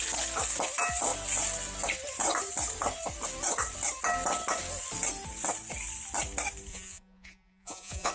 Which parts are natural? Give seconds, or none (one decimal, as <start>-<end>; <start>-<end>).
0.0-6.7